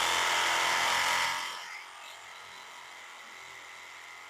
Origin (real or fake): real